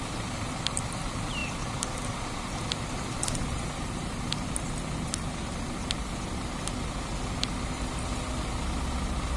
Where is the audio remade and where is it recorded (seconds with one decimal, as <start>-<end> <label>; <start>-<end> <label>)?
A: 0.0-9.4 recorded